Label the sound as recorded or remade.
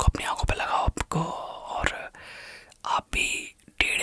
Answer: recorded